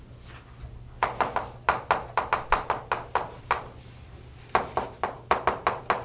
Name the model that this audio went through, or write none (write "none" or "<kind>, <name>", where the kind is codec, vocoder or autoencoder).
none